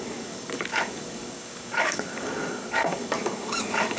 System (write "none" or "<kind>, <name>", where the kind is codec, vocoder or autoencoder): codec, DAC